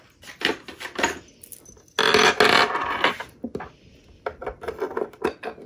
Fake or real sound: real